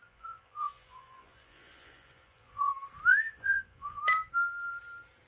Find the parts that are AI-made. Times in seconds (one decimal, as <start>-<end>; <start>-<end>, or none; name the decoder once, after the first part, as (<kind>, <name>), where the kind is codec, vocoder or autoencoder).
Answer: 0.0-2.7 (vocoder, Vocos); 3.1-4.0